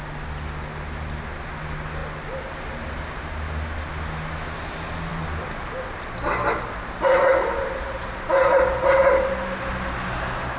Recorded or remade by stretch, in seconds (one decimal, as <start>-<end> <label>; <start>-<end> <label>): 0.0-10.6 recorded